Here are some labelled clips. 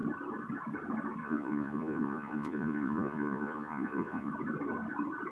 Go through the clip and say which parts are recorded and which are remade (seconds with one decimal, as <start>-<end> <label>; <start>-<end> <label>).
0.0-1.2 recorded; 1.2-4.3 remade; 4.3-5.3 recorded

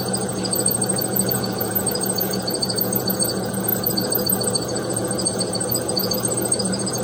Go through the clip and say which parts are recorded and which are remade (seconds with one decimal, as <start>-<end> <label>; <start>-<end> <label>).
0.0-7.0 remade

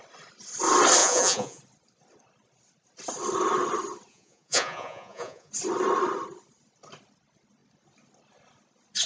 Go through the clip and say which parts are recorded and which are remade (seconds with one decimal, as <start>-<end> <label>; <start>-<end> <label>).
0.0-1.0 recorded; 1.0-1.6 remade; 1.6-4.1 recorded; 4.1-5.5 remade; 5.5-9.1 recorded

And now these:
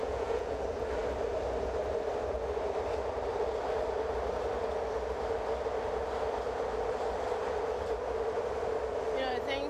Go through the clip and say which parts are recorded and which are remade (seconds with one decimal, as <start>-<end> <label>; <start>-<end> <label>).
0.0-0.6 remade; 0.6-9.7 recorded